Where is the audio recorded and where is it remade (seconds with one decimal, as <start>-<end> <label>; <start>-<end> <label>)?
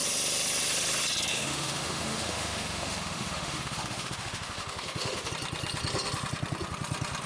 0.0-1.3 recorded; 1.3-5.3 remade; 5.3-7.3 recorded